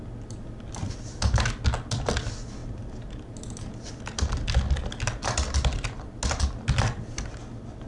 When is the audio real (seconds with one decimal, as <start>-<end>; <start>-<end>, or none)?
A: 0.0-7.9